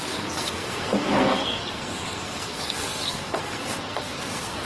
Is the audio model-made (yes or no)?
yes